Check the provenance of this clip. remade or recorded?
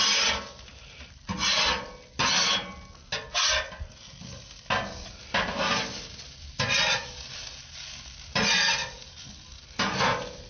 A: recorded